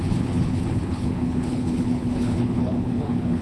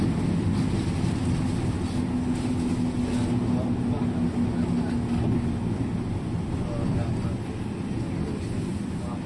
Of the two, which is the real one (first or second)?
second